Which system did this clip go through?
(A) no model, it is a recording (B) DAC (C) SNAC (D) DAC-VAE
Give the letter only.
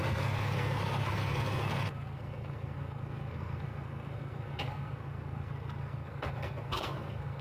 C